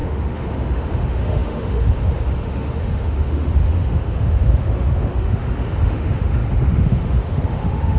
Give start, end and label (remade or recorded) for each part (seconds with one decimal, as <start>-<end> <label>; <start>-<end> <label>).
0.0-8.0 remade